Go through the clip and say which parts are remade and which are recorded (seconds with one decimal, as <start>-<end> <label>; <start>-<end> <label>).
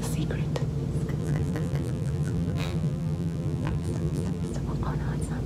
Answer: 0.0-1.2 recorded; 1.2-4.5 remade; 4.5-5.5 recorded